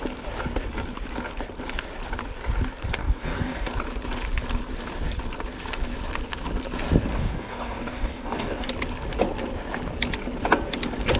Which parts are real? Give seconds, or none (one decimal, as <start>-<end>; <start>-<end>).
0.0-3.0; 3.7-7.1; 8.7-11.2